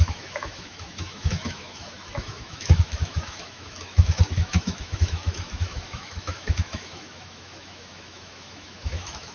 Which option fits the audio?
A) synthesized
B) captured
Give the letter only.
A